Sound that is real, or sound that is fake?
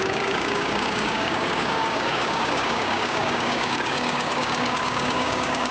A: fake